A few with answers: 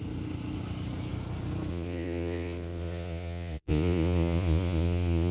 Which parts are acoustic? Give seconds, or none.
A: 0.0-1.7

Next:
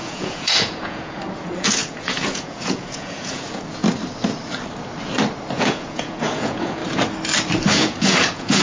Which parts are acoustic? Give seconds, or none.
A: 3.8-5.5; 6.8-7.7

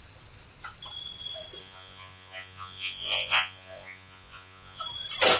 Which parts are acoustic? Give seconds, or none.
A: 0.0-1.6; 4.8-5.4

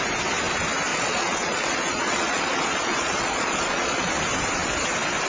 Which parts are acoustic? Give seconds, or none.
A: 0.0-0.9; 4.1-5.3

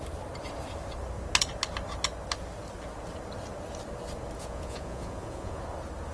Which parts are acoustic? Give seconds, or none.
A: 0.0-4.4; 5.6-6.1